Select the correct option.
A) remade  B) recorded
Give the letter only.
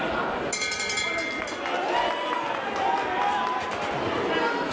B